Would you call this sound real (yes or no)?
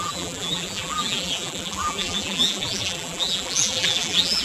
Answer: no